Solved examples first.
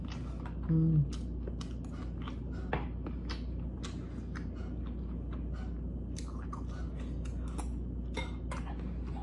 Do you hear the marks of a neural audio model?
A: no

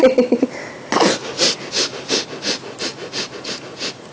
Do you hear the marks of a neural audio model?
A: no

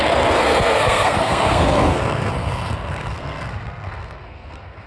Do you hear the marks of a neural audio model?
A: yes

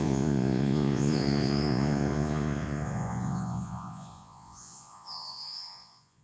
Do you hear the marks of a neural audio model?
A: yes